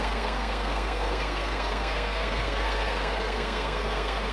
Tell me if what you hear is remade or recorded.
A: remade